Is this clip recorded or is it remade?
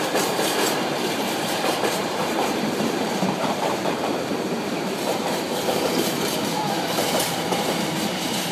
remade